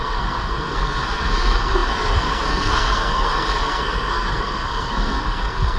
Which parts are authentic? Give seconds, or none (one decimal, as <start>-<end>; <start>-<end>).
none